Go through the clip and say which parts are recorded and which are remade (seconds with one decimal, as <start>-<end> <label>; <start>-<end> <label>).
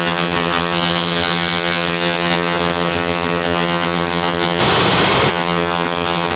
0.0-4.6 remade; 4.6-5.3 recorded; 5.3-6.4 remade